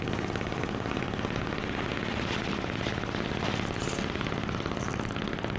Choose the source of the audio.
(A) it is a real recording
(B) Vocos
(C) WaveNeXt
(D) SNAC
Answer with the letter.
A